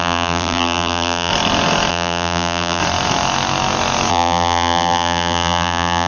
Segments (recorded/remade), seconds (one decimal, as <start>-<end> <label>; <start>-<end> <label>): 0.0-1.3 remade; 1.3-1.9 recorded; 1.9-2.8 remade; 2.8-4.1 recorded; 4.1-6.1 remade